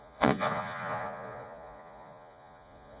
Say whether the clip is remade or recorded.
remade